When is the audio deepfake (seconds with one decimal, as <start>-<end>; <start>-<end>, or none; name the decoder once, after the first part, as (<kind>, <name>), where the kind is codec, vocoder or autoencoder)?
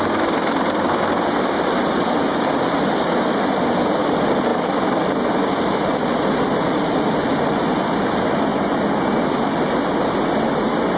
none